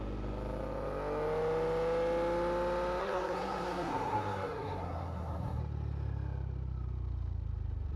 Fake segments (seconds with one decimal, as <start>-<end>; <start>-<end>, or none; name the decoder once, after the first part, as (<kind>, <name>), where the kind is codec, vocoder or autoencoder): 3.0-5.6 (codec, SNAC)